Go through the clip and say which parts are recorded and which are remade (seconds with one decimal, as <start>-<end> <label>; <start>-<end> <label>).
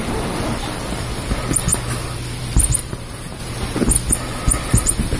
0.0-2.8 recorded; 2.8-3.4 remade; 3.4-5.2 recorded